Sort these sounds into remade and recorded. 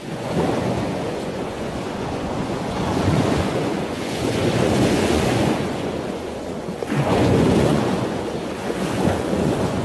remade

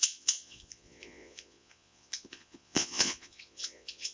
remade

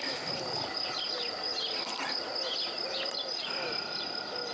recorded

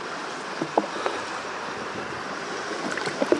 recorded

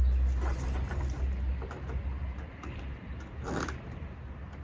recorded